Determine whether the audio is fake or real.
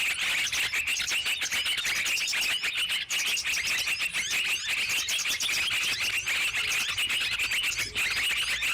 real